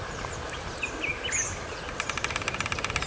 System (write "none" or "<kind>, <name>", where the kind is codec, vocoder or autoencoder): none